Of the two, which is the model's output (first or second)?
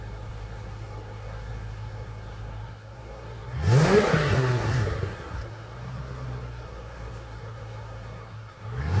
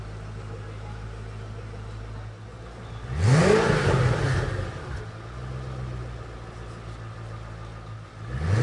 first